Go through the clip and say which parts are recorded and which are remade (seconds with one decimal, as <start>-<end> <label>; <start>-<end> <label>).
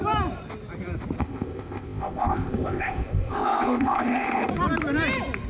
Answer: 0.0-1.2 recorded; 1.2-4.5 remade; 4.5-5.5 recorded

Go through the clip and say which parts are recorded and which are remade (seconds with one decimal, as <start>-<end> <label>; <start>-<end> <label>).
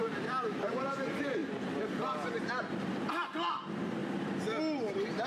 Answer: 0.0-1.4 remade; 1.4-2.9 recorded; 2.9-4.0 remade; 4.0-5.3 recorded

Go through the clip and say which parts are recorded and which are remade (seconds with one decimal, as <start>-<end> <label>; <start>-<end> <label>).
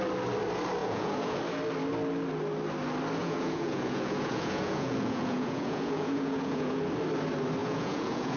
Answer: 0.0-0.8 recorded; 0.8-1.4 remade; 1.4-3.2 recorded; 3.2-6.8 remade; 6.8-7.6 recorded; 7.6-8.4 remade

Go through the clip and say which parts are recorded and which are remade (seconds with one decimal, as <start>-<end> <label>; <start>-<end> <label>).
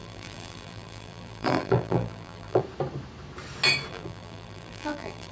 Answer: 0.0-2.6 remade; 2.6-3.9 recorded; 3.9-5.3 remade